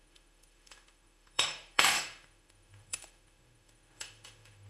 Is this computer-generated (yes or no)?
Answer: yes